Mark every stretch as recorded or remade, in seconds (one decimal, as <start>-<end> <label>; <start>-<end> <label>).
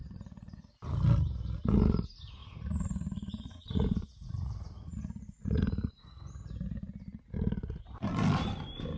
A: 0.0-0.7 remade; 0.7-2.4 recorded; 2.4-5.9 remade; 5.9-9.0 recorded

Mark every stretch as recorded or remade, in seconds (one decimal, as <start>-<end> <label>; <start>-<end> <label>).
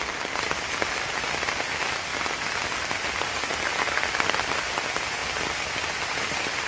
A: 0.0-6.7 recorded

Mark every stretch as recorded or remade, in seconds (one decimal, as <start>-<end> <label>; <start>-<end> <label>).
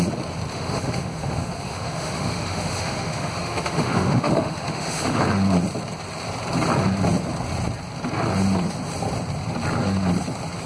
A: 0.0-0.5 recorded; 0.5-5.2 remade; 5.2-10.7 recorded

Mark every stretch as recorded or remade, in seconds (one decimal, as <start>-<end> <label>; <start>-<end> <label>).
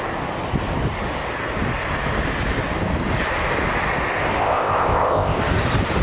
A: 0.0-4.4 recorded; 4.4-5.4 remade; 5.4-6.0 recorded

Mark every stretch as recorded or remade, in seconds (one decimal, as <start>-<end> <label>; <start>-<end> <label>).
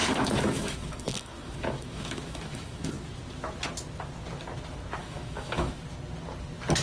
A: 0.0-2.9 remade; 2.9-5.0 recorded; 5.0-5.8 remade; 5.8-6.8 recorded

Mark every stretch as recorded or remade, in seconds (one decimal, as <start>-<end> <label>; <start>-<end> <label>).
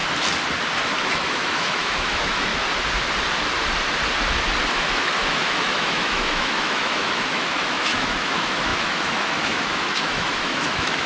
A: 0.0-1.0 recorded; 1.0-2.5 remade; 2.5-4.7 recorded; 4.7-11.1 remade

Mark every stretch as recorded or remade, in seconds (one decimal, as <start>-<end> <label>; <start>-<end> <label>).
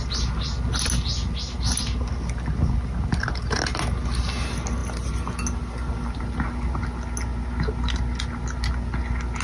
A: 0.0-9.4 recorded